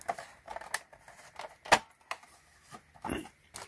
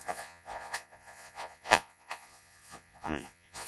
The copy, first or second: second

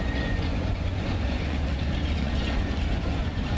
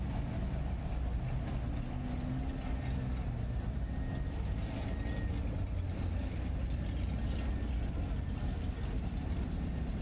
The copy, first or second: first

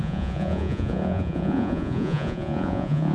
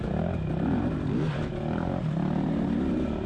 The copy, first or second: first